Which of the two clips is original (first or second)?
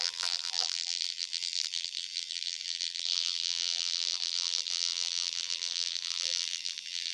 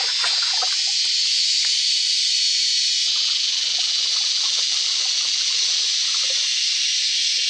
second